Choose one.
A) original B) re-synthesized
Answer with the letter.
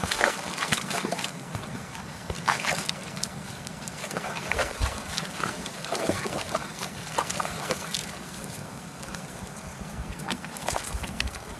B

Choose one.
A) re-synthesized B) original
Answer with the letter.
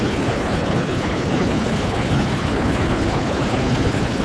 A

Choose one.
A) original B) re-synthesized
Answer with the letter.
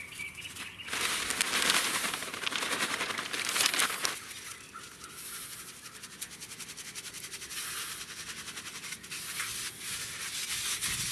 A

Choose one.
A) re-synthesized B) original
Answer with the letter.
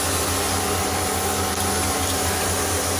B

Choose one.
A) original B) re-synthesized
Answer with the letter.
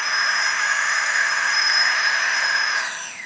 B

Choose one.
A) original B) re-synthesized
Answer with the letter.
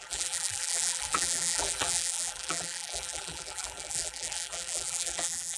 B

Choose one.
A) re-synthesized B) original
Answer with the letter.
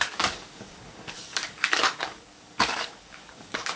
A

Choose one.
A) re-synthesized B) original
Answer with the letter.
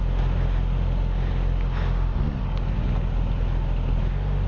B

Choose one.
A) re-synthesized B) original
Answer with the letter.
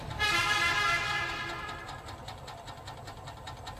B